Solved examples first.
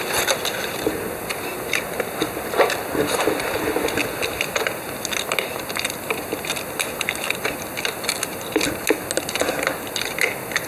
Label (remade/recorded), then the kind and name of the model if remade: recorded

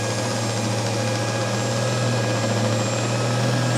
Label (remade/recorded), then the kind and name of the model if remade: recorded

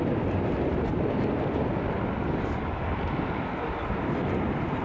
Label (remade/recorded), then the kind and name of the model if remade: recorded